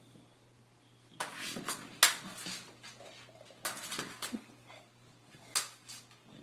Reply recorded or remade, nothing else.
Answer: recorded